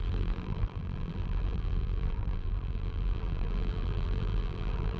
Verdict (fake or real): fake